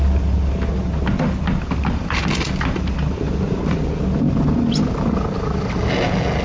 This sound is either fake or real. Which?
real